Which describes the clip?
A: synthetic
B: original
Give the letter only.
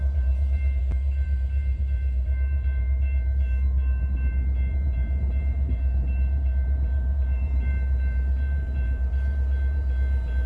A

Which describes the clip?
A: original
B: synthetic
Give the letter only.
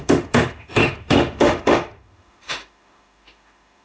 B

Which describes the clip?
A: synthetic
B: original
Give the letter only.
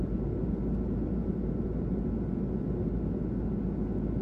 B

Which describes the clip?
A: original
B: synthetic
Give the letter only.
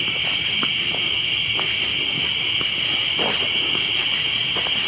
A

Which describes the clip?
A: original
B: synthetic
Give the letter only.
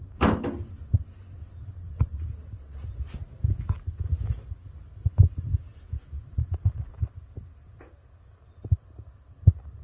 A